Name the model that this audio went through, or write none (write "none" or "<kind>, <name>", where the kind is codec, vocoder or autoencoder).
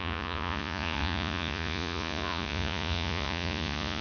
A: vocoder, Vocos